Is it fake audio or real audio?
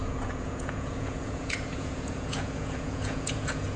fake